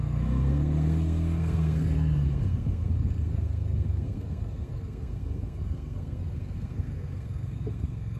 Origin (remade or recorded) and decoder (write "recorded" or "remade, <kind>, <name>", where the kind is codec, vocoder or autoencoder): remade, codec, SNAC